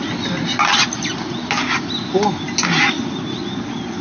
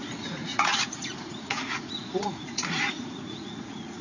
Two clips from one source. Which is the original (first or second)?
first